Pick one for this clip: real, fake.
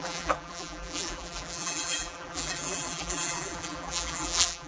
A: fake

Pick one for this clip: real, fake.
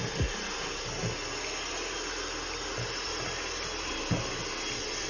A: real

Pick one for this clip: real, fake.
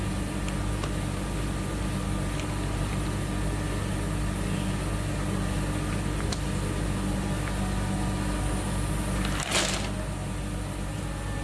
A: real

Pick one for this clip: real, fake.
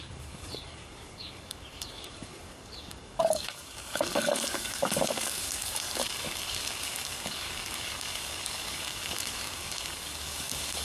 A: fake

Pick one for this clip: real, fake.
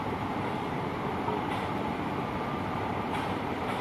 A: fake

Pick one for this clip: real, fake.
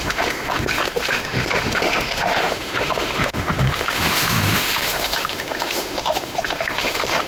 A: fake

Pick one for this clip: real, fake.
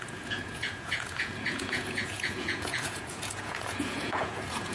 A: fake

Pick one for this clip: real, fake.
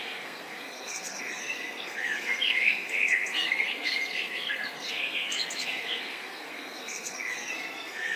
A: fake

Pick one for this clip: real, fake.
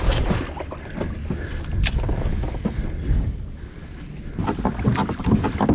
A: real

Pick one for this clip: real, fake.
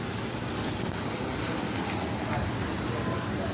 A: real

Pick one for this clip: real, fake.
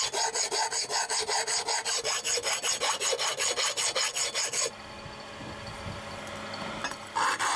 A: real